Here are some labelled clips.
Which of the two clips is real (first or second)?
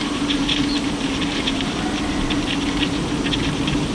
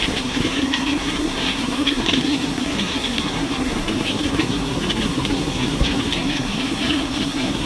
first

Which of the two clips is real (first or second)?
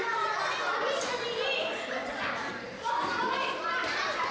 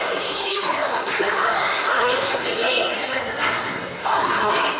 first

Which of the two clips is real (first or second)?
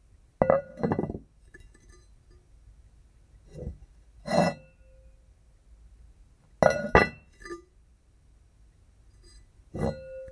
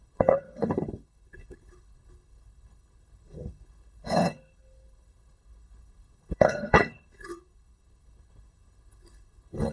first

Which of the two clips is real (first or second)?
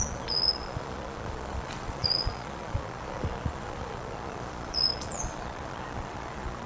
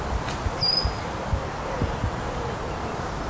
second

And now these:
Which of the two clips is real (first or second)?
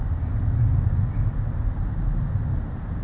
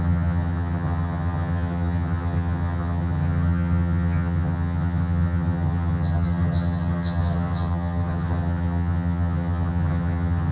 first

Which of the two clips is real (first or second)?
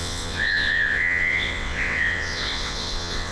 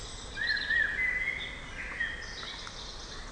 second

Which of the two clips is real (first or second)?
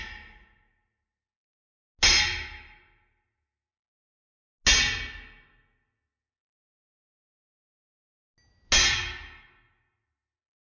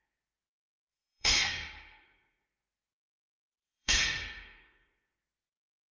first